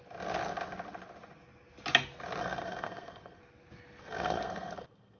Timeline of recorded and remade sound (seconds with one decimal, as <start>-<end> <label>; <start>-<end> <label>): 0.0-2.4 recorded; 2.4-3.4 remade; 3.4-4.0 recorded; 4.0-5.2 remade